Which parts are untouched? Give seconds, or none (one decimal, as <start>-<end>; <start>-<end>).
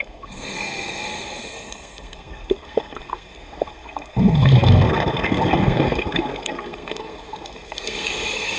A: none